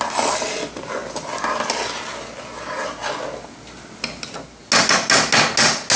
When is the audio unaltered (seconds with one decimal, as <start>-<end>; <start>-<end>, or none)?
0.0-6.0